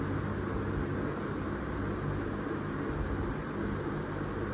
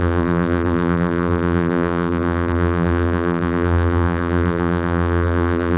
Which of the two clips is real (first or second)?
first